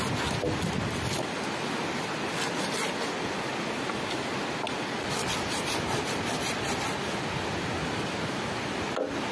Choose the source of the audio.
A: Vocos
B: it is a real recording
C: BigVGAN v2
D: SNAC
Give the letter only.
B